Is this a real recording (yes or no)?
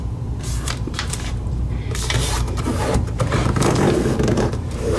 no